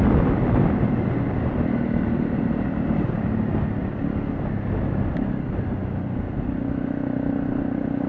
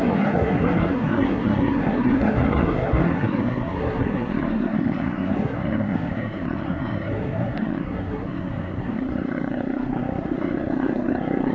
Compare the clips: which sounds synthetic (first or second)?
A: second